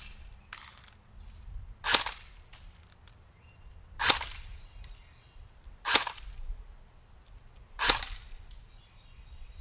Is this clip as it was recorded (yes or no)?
yes